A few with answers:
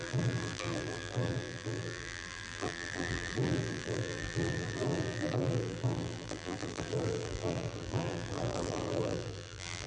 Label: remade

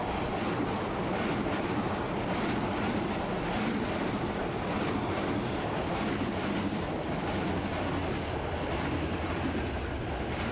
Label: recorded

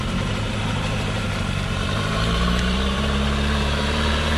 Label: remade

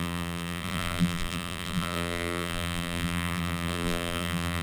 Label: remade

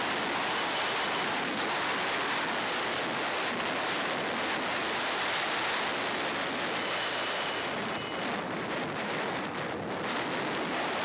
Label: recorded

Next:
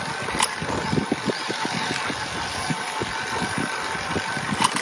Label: recorded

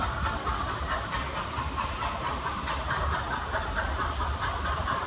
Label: recorded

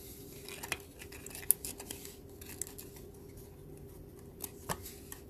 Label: recorded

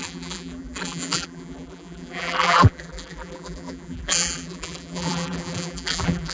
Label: remade